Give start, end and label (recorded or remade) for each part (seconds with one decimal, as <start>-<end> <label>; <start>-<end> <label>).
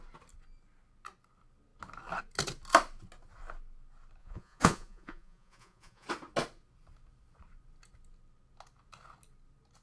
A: 0.0-4.2 recorded; 4.2-6.1 remade; 6.1-9.8 recorded